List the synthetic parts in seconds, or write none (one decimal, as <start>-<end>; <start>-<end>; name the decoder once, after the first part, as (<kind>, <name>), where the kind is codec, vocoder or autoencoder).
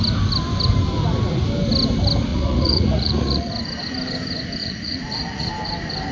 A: 2.3-3.5 (vocoder, Vocos); 4.6-5.5